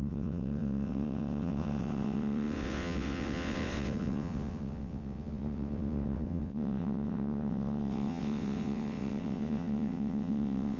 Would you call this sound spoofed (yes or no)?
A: yes